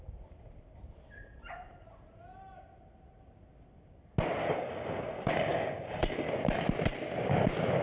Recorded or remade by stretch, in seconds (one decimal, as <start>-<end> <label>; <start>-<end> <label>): 0.0-4.4 recorded; 4.4-6.3 remade; 6.3-7.8 recorded